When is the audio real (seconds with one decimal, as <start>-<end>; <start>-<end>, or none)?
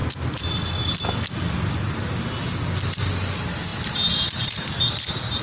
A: 0.0-5.4